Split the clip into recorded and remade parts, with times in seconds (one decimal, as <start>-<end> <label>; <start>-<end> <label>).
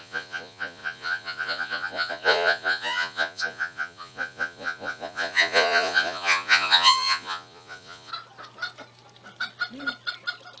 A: 0.0-8.1 remade; 8.1-10.6 recorded